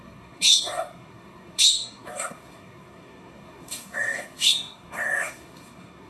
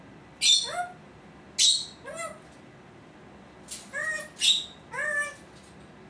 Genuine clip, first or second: second